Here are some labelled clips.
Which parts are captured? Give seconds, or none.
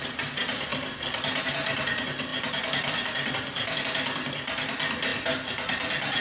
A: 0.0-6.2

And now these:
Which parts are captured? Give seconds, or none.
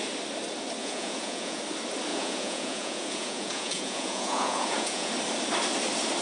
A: 0.0-0.8; 1.6-2.1; 5.1-6.2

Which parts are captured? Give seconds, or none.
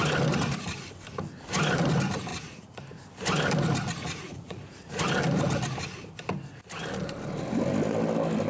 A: 0.0-2.3; 2.8-4.0; 5.0-8.5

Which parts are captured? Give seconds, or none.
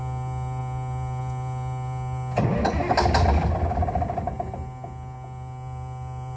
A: 0.0-6.4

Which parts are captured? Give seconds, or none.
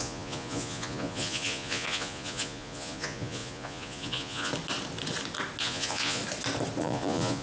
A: 4.5-5.6; 6.2-6.8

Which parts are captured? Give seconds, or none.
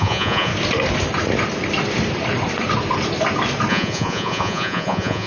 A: 0.5-3.7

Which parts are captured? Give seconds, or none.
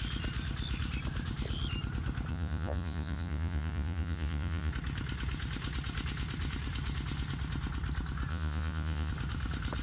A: 0.0-2.3; 4.7-8.3; 9.1-9.8